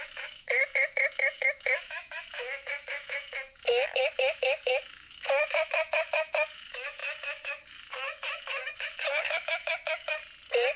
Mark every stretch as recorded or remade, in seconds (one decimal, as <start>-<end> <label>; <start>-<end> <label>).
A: 0.0-10.2 remade; 10.2-10.8 recorded